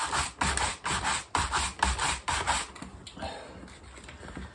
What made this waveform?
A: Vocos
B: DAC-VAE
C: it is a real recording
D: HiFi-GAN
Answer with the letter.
C